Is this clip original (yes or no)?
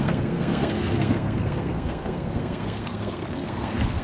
no